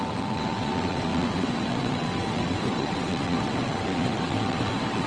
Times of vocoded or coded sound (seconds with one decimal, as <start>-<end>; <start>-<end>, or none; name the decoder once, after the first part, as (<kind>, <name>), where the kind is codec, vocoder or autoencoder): 0.0-5.1 (vocoder, WaveNeXt)